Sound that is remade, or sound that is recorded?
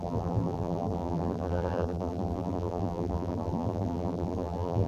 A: remade